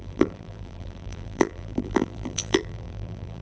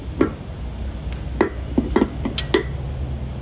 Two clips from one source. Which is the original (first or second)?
second